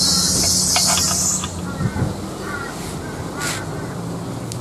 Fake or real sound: real